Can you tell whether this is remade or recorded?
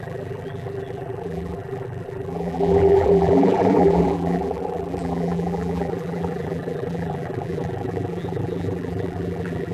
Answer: remade